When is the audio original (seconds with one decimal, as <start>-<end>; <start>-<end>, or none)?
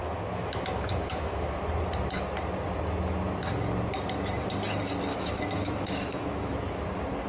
1.6-5.1; 6.8-7.3